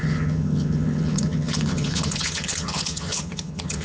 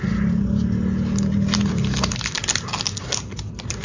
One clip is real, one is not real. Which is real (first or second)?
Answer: second